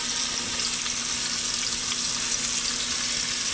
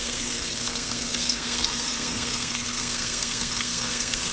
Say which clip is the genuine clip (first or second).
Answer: first